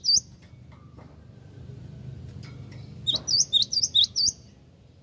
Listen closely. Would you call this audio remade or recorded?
recorded